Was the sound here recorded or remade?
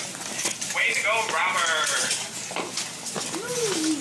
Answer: recorded